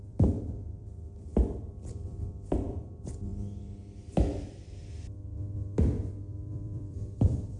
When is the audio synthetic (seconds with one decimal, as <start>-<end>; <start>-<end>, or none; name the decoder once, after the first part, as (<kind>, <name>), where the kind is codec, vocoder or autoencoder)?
0.0-1.3 (vocoder, BigVGAN v2); 1.9-3.3; 6.2-7.6